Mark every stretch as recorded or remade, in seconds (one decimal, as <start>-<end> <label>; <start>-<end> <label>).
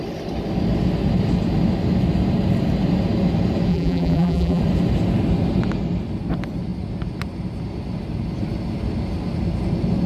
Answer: 0.0-3.7 recorded; 3.7-4.6 remade; 4.6-10.1 recorded